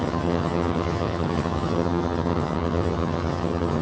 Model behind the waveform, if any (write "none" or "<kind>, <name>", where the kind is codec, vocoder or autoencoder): vocoder, HiFi-GAN